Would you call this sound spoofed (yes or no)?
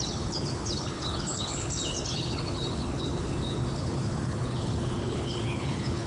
yes